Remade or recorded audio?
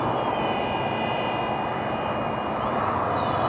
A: remade